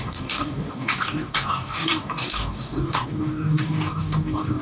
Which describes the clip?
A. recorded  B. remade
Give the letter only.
B